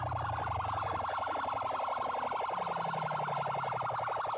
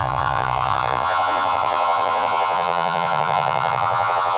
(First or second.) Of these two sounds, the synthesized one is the second